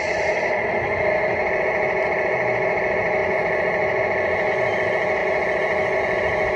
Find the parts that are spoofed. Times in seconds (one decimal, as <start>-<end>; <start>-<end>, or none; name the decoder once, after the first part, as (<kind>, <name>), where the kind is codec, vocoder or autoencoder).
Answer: none